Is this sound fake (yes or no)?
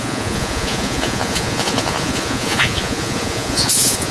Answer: yes